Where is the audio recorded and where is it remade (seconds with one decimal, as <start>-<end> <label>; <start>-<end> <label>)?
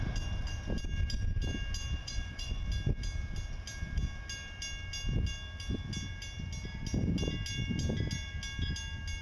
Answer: 0.0-2.0 recorded; 2.0-2.6 remade; 2.6-9.2 recorded